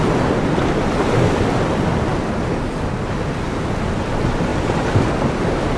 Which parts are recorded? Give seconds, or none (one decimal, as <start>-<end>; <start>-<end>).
0.0-5.8